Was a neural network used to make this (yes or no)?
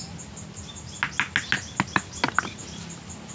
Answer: no